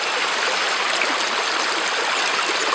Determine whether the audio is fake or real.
real